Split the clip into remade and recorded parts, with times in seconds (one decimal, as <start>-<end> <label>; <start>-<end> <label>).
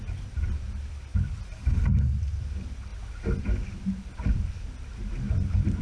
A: 0.0-2.9 remade; 2.9-3.4 recorded; 3.4-5.8 remade